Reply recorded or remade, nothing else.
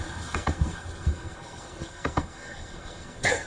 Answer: remade